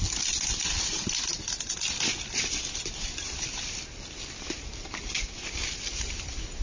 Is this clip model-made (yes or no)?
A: no